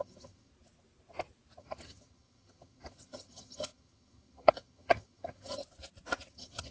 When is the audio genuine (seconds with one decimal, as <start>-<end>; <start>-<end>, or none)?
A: 0.5-1.6; 5.6-6.3